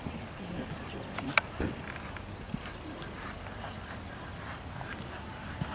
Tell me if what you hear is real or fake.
real